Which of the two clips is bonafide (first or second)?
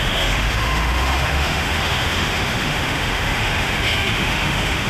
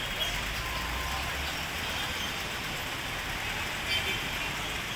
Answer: second